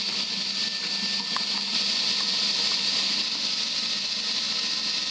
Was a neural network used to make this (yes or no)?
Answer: no